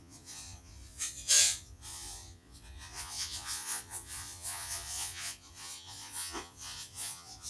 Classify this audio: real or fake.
fake